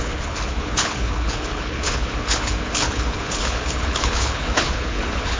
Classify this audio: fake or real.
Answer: fake